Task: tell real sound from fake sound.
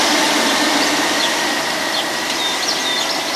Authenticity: real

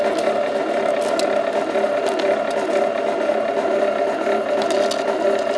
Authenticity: real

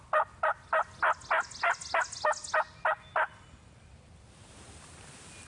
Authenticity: real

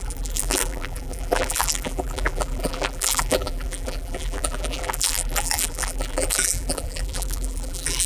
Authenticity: fake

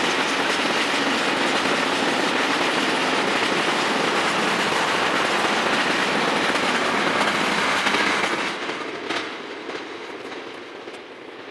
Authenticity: real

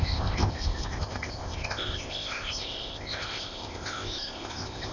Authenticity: fake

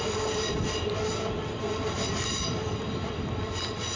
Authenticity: real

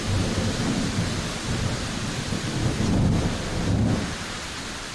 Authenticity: real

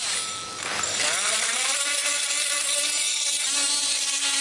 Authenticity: real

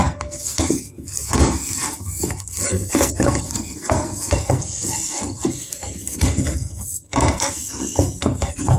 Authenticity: fake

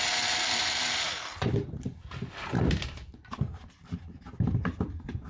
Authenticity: fake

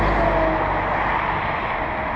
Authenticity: real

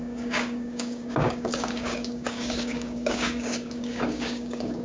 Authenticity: fake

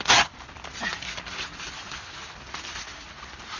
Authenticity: real